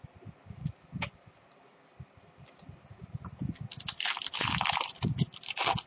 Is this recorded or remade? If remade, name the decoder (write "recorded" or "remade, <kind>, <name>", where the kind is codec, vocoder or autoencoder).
recorded